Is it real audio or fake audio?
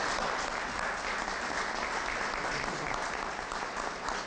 real